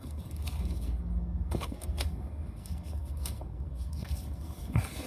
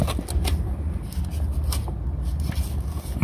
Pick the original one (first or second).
second